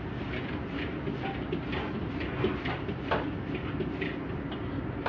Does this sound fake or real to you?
real